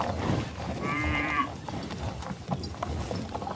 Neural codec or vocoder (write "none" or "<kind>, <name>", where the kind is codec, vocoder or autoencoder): vocoder, BigVGAN v2